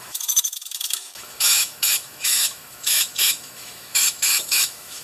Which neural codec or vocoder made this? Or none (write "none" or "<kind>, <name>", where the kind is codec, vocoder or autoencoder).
autoencoder, DAC-VAE